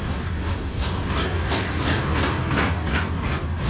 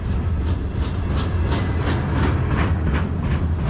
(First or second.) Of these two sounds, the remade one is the first